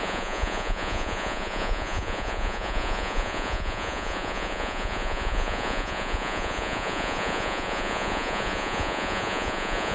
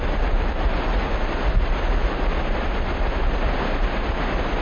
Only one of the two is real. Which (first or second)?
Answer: second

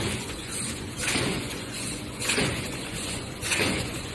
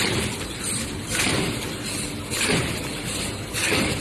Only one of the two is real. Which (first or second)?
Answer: second